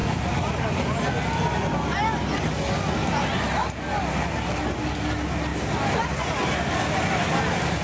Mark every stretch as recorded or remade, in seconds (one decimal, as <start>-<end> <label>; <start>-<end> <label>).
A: 0.0-7.8 recorded